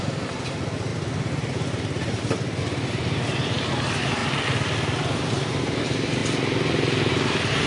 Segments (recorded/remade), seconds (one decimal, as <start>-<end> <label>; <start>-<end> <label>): 0.0-4.2 remade; 4.2-5.1 recorded; 5.1-6.2 remade; 6.2-7.1 recorded; 7.1-7.7 remade